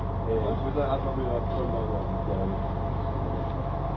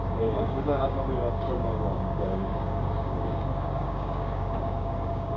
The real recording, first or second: first